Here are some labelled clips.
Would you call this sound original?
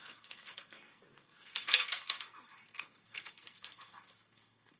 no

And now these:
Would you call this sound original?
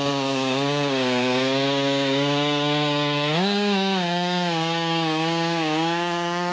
no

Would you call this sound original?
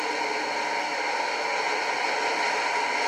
yes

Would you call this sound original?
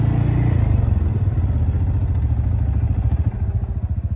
yes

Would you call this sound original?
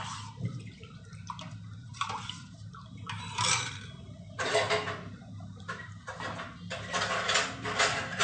yes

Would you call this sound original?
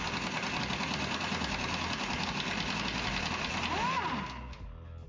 yes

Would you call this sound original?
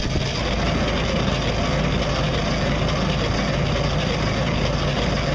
yes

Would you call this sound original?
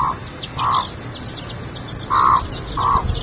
yes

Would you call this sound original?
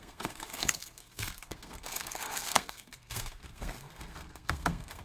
no